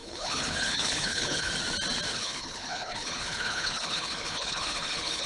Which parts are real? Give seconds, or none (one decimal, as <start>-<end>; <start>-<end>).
1.5-2.1